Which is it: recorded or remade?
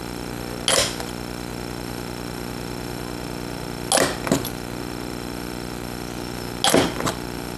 recorded